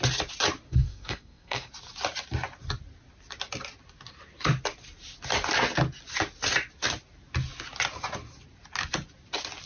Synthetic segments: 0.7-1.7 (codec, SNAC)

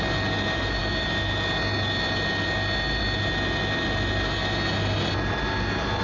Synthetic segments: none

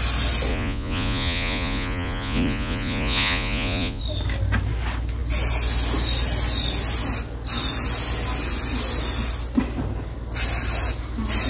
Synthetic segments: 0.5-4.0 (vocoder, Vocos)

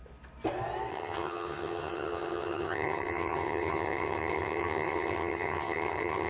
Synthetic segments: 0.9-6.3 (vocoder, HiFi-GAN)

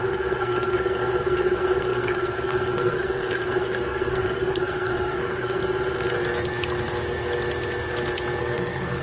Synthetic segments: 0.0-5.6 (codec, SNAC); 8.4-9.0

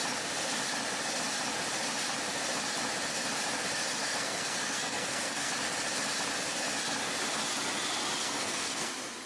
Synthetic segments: 4.0-5.5 (codec, SNAC); 8.2-8.9

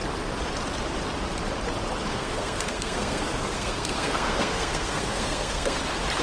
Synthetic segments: 2.1-5.8 (codec, SNAC)